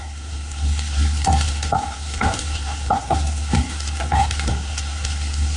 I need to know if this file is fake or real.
fake